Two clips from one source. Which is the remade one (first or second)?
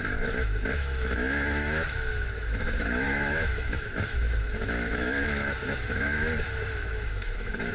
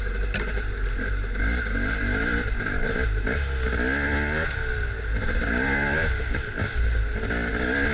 first